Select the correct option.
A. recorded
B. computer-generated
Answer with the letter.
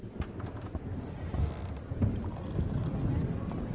A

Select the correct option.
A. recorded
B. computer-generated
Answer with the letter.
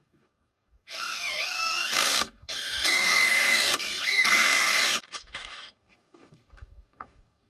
B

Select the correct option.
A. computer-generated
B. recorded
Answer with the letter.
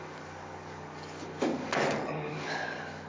A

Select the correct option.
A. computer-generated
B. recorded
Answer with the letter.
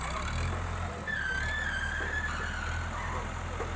B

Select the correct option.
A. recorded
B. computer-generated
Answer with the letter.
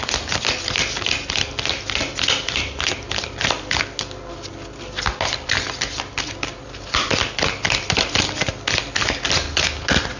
A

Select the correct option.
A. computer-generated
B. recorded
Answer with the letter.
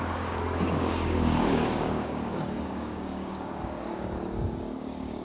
A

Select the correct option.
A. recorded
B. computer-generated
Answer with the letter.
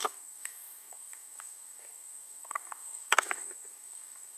B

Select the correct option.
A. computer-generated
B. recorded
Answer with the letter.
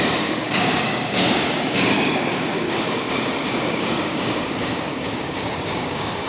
A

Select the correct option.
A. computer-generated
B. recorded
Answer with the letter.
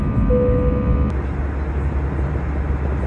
B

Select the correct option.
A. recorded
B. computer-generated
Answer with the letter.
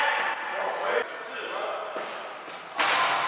A